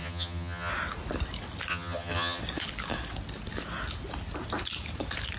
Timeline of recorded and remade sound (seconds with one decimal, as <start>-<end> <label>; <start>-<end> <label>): 0.0-0.7 remade; 0.7-1.7 recorded; 1.7-2.4 remade; 2.4-5.4 recorded